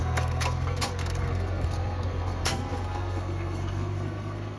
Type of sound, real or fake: fake